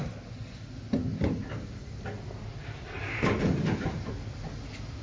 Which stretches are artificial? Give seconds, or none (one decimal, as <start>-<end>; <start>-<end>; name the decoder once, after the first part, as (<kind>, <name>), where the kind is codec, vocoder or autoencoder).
1.1-1.8 (vocoder, BigVGAN v2); 2.6-4.1